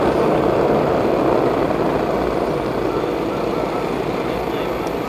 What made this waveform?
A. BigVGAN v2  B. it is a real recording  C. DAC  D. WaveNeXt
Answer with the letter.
B